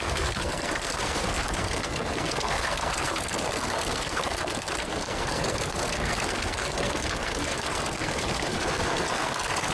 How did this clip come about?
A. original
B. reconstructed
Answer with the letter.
B